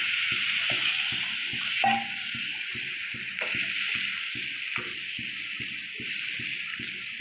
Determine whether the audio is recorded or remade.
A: recorded